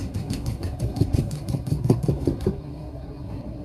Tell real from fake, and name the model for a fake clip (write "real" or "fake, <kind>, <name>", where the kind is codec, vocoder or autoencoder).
fake, codec, SNAC